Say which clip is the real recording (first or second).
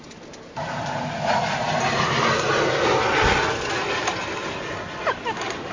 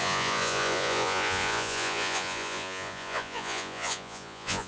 first